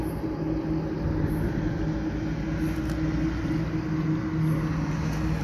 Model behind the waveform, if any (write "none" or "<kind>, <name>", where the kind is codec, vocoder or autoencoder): none